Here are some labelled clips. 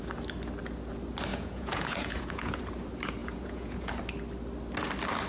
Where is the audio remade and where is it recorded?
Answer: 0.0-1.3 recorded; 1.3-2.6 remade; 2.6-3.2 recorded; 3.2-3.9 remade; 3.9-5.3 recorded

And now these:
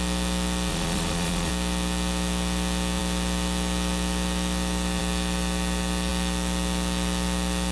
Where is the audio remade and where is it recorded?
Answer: 0.0-0.7 recorded; 0.7-1.5 remade; 1.5-7.7 recorded